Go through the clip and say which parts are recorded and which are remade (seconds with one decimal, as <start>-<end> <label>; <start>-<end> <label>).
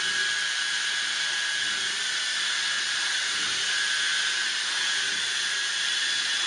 0.0-6.5 recorded